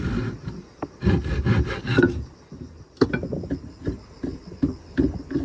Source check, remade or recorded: recorded